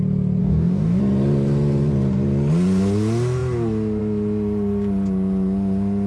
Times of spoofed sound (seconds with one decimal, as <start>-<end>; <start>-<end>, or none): 0.4-1.0

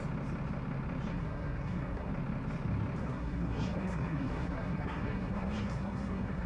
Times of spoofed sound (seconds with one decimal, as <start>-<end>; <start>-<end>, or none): 1.1-2.1; 3.0-6.5

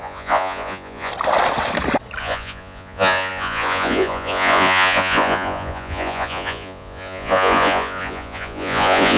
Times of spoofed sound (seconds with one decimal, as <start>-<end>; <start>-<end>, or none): 0.0-1.1; 2.2-9.2

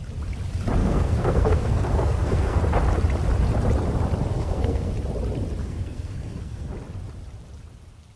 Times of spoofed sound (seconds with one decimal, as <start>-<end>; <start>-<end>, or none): 0.8-2.6; 4.3-4.9; 5.6-6.7

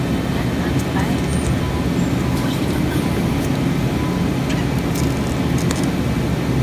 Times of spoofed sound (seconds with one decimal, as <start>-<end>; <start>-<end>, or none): none

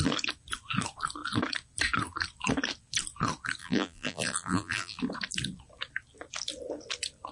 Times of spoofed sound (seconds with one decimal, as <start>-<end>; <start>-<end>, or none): 3.6-5.0